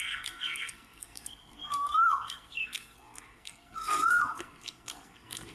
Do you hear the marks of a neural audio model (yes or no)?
yes